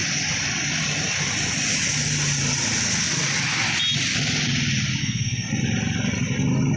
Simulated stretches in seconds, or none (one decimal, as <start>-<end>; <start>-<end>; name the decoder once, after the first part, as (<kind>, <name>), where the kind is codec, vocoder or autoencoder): 5.0-5.5 (codec, SNAC)